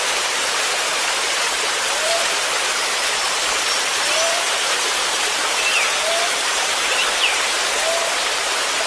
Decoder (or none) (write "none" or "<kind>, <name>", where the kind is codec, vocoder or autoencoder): vocoder, BigVGAN v2